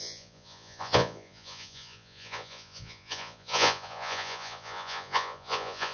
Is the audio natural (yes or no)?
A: no